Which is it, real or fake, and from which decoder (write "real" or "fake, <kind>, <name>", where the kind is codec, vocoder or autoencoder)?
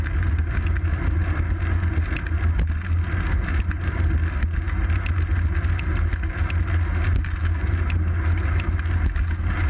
real